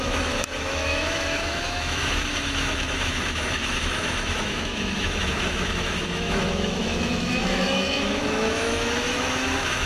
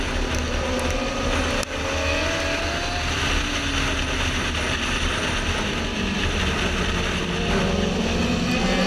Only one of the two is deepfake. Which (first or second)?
first